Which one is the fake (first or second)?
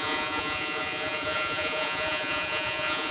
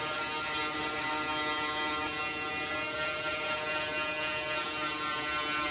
first